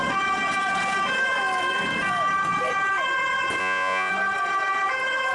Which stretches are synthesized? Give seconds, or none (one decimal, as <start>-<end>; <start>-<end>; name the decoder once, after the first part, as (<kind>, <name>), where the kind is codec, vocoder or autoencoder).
3.6-4.1 (vocoder, Vocos)